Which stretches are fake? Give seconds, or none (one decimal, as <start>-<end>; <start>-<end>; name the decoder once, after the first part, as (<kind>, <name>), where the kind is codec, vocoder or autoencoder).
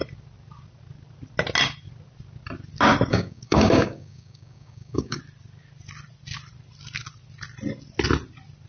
3.1-5.2 (codec, DAC)